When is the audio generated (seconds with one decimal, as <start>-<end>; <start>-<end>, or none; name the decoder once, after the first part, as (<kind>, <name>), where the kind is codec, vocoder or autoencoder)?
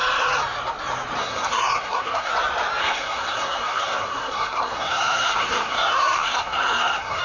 1.2-2.3 (codec, SNAC); 2.8-7.2